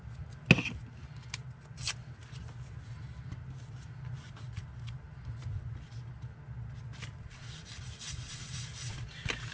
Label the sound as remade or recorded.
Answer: recorded